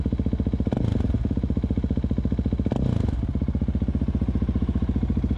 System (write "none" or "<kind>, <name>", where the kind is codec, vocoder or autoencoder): none